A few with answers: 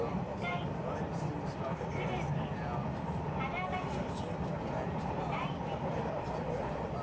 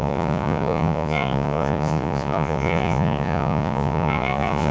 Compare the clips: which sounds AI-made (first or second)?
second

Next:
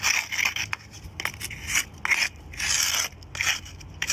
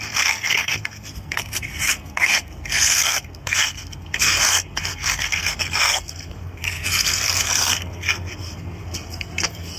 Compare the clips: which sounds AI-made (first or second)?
second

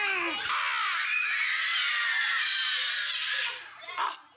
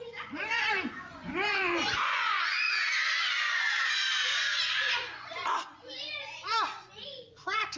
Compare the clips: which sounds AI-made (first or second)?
second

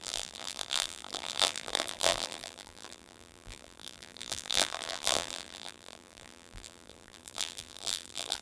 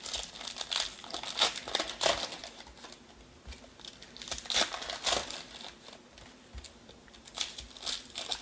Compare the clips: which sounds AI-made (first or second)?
first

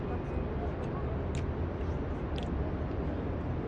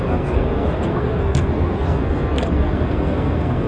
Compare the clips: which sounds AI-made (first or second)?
second